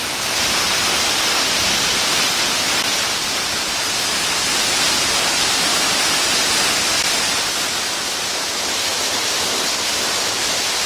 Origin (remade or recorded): recorded